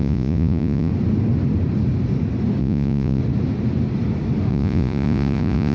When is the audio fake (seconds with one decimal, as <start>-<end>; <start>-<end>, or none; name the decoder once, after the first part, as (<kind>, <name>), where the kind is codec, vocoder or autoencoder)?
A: 0.0-0.9 (vocoder, Vocos); 2.6-3.2; 4.5-5.7

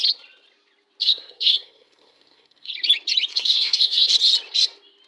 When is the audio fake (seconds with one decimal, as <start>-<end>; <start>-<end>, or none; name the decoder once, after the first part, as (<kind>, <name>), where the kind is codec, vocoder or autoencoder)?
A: 1.0-2.7 (codec, SNAC); 3.3-4.1

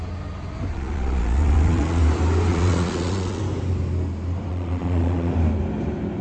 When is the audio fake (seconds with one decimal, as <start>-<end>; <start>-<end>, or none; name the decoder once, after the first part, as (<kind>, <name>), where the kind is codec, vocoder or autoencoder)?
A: 0.7-2.0 (vocoder, Vocos); 2.5-3.4; 4.5-5.3

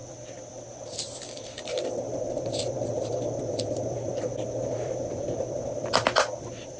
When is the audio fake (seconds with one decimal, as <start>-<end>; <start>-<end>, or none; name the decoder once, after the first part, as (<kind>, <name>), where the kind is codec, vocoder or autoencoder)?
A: 0.0-4.1 (vocoder, BigVGAN v2); 4.6-6.8